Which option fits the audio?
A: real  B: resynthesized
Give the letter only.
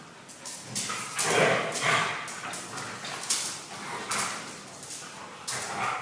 A